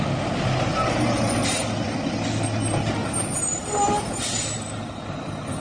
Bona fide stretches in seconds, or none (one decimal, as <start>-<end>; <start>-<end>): 0.0-5.6